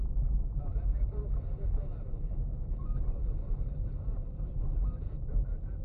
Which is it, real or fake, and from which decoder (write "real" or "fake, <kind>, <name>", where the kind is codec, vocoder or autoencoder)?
fake, vocoder, BigVGAN v2